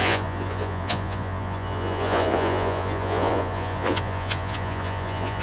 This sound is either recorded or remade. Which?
remade